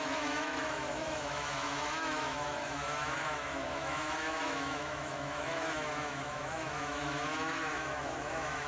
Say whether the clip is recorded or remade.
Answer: remade